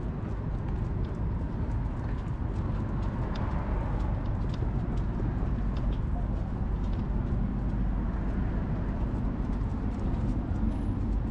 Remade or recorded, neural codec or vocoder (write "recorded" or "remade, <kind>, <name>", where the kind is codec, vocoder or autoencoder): recorded